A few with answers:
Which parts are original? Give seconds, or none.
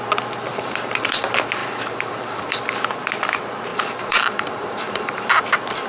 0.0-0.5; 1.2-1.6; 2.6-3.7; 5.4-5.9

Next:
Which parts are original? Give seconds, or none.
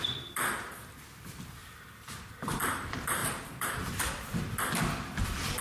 0.0-1.6; 2.3-3.2; 3.9-5.6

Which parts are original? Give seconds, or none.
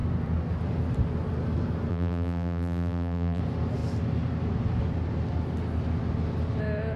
0.0-1.9; 3.4-7.0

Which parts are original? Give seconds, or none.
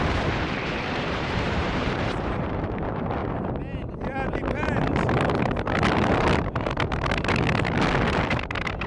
3.2-8.3